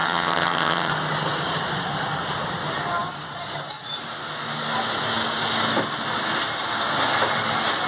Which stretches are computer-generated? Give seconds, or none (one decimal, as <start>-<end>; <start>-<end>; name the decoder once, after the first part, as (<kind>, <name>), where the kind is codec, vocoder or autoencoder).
0.0-0.9 (vocoder, HiFi-GAN)

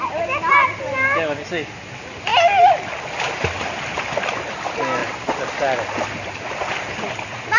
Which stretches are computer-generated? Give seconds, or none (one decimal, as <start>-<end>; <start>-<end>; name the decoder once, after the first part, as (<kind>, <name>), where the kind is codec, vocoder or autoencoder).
none

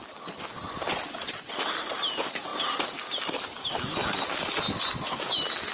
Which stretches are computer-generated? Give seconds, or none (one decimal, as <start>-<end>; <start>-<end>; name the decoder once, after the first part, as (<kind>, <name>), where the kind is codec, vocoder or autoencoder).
none

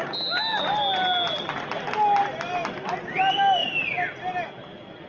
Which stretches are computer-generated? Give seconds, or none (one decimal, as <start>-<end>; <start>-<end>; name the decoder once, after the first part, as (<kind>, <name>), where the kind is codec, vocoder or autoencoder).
none